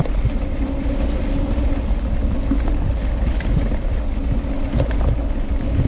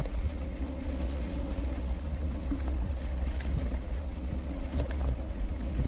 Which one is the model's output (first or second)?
second